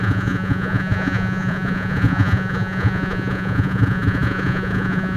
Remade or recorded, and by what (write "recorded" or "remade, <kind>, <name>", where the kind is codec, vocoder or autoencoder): remade, vocoder, Vocos